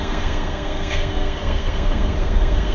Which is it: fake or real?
fake